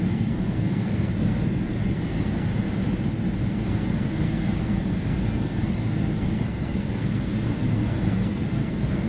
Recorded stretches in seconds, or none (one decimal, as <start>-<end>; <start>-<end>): 2.5-3.5